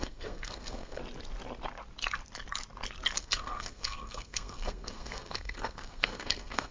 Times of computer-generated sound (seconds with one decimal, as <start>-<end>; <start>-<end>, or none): 0.0-1.0; 3.2-6.7